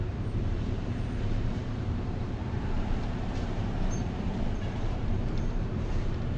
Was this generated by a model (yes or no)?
yes